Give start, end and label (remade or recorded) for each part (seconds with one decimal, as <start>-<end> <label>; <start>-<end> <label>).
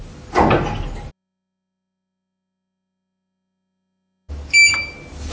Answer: 0.0-1.1 recorded; 1.1-4.3 remade; 4.3-5.3 recorded